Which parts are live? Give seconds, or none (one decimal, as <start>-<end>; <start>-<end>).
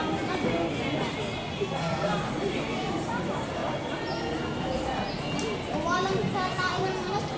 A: 0.0-7.4